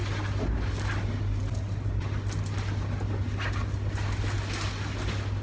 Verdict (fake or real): real